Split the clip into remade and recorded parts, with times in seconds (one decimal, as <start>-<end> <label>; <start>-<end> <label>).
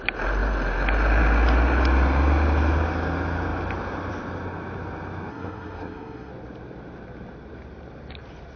0.0-5.3 recorded; 5.3-6.3 remade; 6.3-8.6 recorded